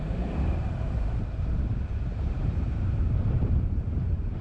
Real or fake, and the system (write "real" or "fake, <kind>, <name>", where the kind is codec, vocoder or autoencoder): fake, vocoder, BigVGAN v2